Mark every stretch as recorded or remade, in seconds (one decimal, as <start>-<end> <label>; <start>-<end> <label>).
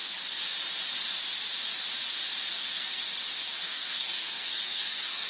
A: 0.0-2.5 recorded; 2.5-3.0 remade; 3.0-3.6 recorded; 3.6-5.3 remade